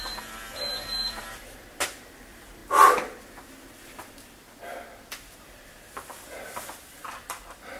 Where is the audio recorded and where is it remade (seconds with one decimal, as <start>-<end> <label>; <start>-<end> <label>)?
0.0-2.6 remade; 2.6-3.2 recorded; 3.2-7.8 remade